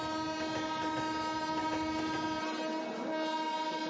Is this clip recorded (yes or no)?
yes